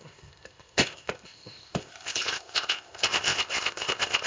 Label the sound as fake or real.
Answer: fake